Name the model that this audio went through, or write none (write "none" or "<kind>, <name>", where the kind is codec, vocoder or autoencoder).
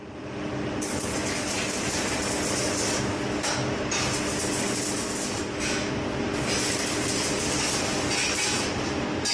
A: none